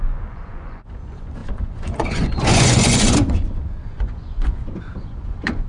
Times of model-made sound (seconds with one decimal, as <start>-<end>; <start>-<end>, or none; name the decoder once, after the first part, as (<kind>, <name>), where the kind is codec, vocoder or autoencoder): 0.0-5.7 (vocoder, Vocos)